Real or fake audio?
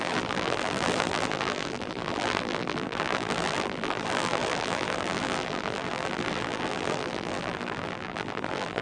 fake